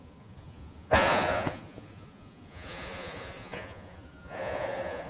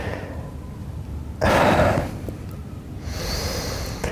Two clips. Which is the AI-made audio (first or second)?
first